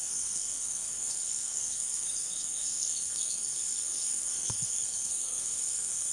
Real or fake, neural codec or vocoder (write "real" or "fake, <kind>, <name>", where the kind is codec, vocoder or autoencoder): fake, codec, SNAC